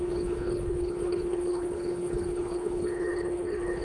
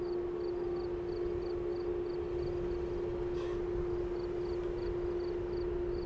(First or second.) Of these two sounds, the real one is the second